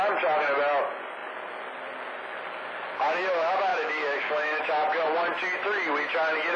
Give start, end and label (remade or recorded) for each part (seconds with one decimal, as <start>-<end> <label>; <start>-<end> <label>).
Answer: 0.0-3.7 recorded; 3.7-4.6 remade; 4.6-6.6 recorded